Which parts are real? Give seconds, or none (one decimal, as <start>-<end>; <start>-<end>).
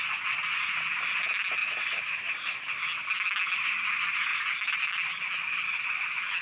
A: 0.0-1.6; 2.7-4.3; 5.1-6.4